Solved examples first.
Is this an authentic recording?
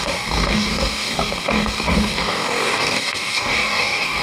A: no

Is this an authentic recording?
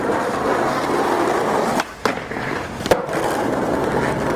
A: yes